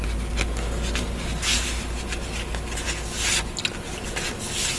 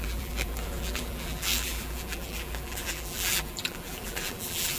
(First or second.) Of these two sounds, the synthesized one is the second